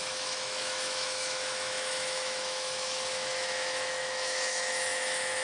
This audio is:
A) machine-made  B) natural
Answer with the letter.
A